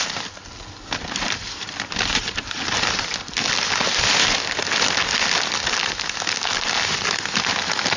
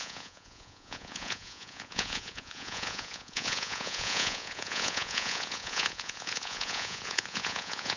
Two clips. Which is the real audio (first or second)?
first